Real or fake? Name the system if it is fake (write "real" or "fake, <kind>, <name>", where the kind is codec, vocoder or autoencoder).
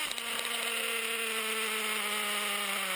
real